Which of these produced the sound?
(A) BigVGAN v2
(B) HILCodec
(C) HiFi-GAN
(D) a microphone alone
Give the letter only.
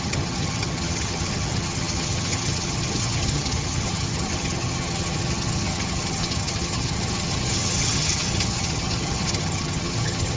C